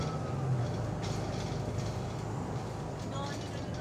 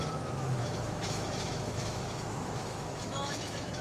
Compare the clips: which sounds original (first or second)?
first